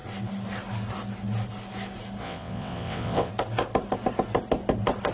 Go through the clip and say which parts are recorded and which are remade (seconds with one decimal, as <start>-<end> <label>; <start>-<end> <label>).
0.0-2.2 recorded; 2.2-3.3 remade; 3.3-5.1 recorded